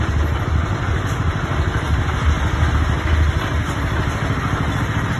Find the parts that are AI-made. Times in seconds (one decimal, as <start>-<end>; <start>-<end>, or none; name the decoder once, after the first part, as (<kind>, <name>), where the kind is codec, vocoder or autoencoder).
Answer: 0.7-2.7 (vocoder, BigVGAN v2)

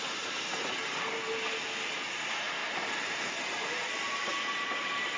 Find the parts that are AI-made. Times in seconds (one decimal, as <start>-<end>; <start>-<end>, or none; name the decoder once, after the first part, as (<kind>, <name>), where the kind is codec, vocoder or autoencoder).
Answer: 2.6-3.2 (vocoder, BigVGAN v2)

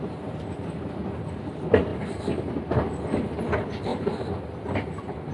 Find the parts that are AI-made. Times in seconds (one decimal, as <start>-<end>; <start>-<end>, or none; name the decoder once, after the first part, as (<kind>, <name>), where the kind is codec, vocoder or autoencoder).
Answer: none

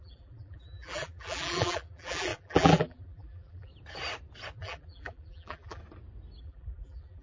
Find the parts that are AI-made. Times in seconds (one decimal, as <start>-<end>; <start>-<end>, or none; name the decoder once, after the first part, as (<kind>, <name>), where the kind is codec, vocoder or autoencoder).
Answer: 0.0-3.7 (vocoder, BigVGAN v2); 4.5-5.8; 6.4-7.2

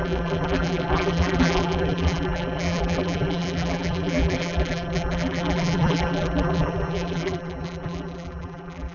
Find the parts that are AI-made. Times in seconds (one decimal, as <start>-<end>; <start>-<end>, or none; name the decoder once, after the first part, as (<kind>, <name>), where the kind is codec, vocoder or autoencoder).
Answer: 0.0-8.9 (vocoder, BigVGAN v2)

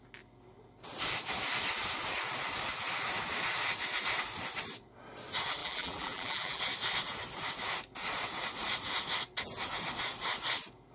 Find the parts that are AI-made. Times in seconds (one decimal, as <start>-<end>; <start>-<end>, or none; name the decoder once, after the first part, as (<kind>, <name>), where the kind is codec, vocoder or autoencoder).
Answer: 5.6-6.6 (vocoder, BigVGAN v2)

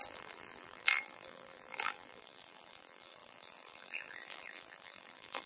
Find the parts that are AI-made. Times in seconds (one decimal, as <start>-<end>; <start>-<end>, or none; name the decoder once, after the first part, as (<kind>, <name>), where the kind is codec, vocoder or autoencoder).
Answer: 0.0-5.5 (vocoder, BigVGAN v2)